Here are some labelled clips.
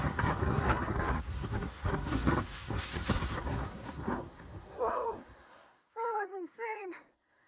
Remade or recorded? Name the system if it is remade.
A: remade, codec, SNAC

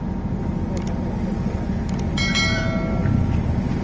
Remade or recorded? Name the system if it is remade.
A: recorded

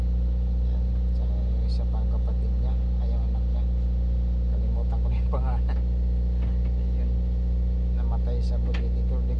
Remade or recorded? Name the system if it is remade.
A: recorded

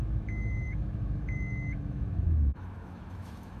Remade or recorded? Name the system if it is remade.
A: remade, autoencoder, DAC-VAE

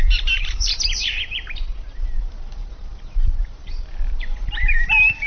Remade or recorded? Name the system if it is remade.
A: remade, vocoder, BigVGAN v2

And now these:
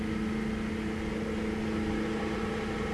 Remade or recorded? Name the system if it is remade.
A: recorded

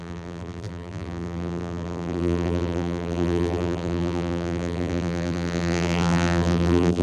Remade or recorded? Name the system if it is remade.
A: remade, vocoder, BigVGAN v2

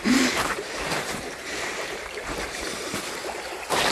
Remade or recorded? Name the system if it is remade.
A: remade, vocoder, BigVGAN v2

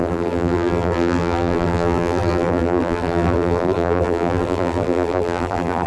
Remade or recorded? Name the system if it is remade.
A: remade, vocoder, BigVGAN v2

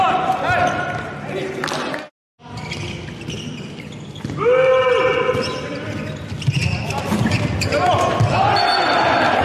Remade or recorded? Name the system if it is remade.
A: recorded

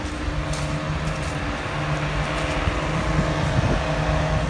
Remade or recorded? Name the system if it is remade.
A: recorded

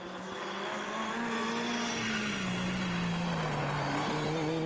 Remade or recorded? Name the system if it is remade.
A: recorded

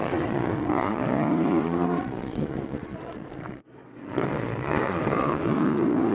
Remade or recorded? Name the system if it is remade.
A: remade, vocoder, Vocos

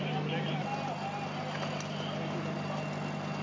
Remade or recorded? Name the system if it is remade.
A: recorded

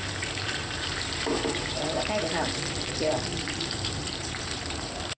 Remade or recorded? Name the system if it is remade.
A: remade, vocoder, BigVGAN v2